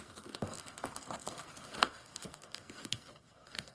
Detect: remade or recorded remade